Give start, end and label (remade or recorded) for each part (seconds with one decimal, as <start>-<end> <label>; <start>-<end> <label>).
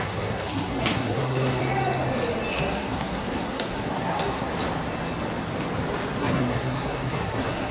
0.0-1.6 remade; 1.6-2.5 recorded; 2.5-4.5 remade; 4.5-6.2 recorded; 6.2-7.7 remade